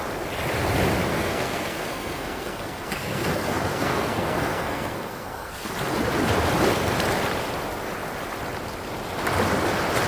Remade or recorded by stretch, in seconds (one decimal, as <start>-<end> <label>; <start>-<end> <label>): 0.0-1.1 recorded; 1.1-5.7 remade; 5.7-10.1 recorded